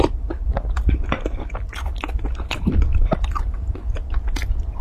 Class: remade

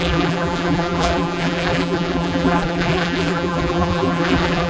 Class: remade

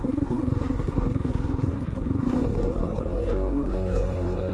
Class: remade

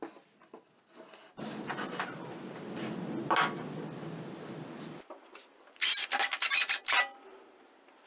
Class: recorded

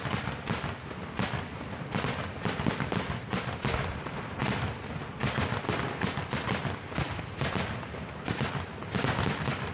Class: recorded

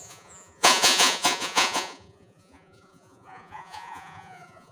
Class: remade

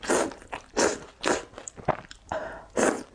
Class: recorded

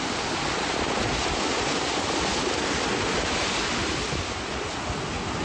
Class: recorded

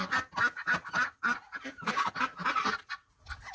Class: recorded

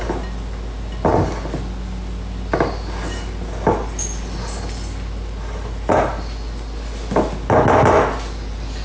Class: recorded